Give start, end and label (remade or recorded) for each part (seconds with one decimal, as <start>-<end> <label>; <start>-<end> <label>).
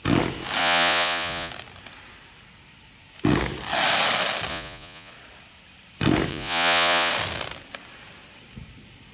0.0-0.6 recorded; 0.6-1.5 remade; 1.5-4.5 recorded; 4.5-5.1 remade; 5.1-6.3 recorded; 6.3-7.1 remade; 7.1-9.1 recorded